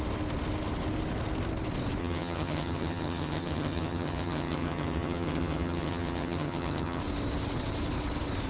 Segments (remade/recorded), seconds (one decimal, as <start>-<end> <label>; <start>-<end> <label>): 0.0-2.0 recorded; 2.0-7.0 remade; 7.0-8.5 recorded